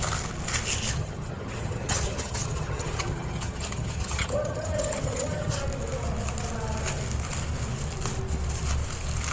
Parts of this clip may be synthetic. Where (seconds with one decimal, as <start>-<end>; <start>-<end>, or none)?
0.9-5.6